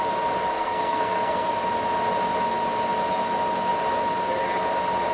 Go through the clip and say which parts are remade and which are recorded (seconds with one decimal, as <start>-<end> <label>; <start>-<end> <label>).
0.0-0.5 recorded; 0.5-1.5 remade; 1.5-5.1 recorded